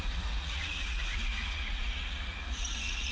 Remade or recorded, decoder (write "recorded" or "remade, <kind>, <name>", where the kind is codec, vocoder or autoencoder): remade, vocoder, Vocos